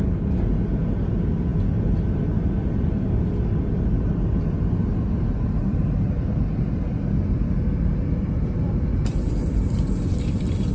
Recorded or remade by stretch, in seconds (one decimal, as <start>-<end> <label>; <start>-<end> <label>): 0.0-10.7 recorded